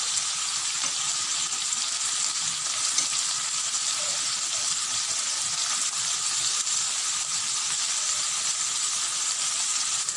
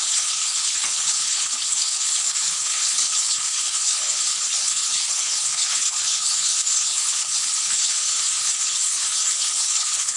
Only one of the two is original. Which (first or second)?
first